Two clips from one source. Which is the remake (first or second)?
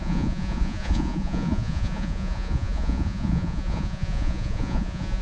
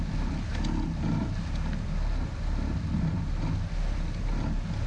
first